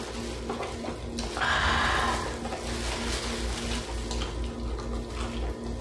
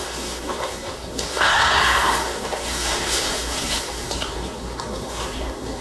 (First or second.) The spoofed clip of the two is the second